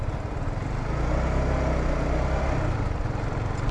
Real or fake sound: real